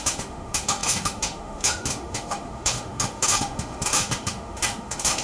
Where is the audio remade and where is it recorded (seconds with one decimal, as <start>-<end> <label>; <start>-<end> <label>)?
0.0-5.2 remade